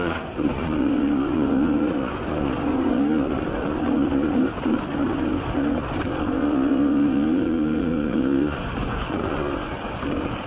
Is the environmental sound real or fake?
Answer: fake